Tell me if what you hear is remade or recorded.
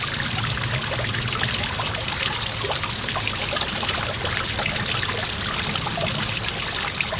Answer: recorded